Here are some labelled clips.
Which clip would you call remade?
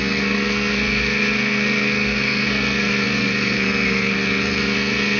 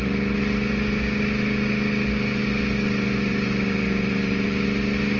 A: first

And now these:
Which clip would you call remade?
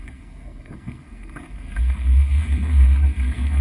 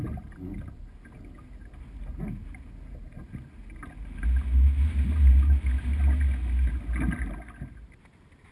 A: first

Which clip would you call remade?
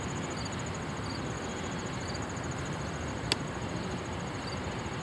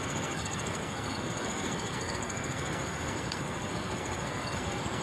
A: second